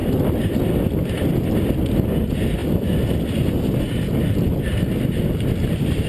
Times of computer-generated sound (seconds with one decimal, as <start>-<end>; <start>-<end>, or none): none